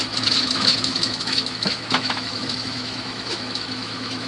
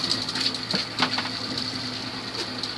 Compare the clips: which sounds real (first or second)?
second